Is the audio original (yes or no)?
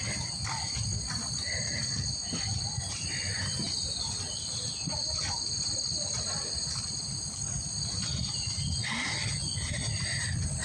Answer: yes